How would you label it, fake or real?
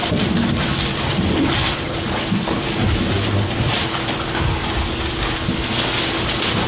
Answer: real